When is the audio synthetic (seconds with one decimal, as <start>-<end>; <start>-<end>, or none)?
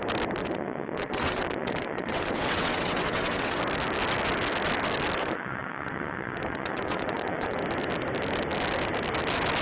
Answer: 0.4-3.6; 5.2-7.6